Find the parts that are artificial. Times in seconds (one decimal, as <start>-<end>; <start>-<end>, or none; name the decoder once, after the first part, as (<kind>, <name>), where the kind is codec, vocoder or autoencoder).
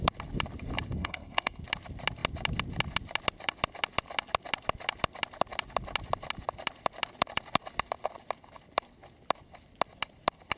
1.0-1.6 (codec, SNAC)